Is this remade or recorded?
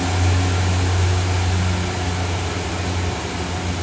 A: recorded